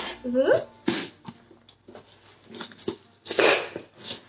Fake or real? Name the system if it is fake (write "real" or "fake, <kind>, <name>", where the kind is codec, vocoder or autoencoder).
real